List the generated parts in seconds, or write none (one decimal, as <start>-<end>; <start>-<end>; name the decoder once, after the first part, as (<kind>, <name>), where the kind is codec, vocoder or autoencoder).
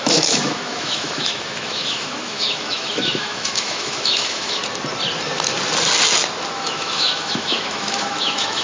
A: 0.0-4.6 (autoencoder, DAC-VAE); 6.5-8.6